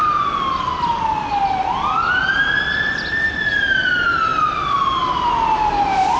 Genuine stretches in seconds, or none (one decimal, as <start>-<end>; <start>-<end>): 0.0-6.2